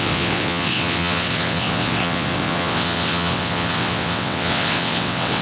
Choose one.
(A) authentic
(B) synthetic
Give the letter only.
B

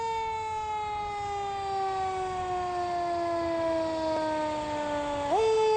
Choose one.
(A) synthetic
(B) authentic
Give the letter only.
B